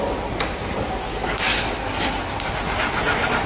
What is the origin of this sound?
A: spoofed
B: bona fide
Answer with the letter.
B